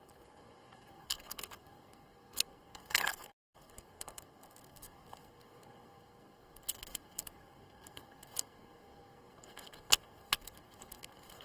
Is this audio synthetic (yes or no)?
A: yes